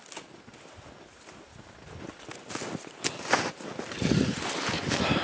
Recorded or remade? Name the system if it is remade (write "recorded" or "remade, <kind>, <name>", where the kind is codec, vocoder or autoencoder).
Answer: recorded